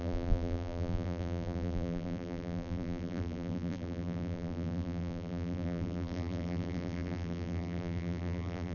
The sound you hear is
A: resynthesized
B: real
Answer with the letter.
A